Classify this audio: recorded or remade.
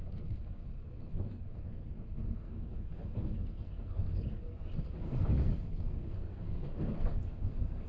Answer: remade